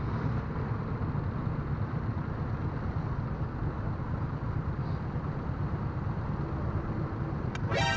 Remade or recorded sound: recorded